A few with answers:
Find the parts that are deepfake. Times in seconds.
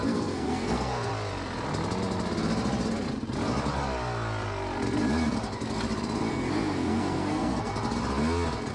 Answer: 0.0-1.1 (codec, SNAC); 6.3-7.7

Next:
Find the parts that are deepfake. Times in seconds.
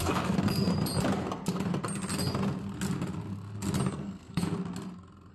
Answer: 0.0-0.7 (codec, SNAC); 3.9-4.5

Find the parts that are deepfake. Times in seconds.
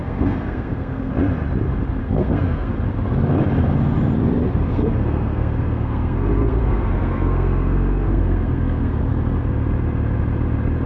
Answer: 0.0-1.1 (codec, SNAC); 2.0-2.7; 4.7-9.0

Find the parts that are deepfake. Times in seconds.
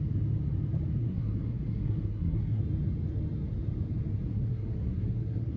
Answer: 1.0-2.6 (codec, SNAC); 4.3-5.6